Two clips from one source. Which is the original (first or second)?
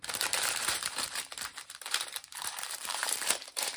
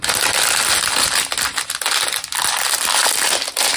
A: second